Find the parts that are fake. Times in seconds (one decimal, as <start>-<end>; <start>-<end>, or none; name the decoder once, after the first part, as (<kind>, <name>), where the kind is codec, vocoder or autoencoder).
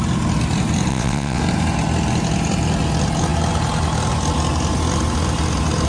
0.9-1.4 (vocoder, WaveNeXt)